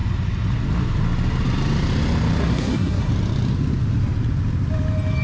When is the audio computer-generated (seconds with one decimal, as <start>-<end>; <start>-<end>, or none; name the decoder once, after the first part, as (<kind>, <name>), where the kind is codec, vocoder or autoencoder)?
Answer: 2.4-3.1 (codec, SNAC)